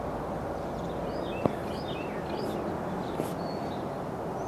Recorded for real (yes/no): yes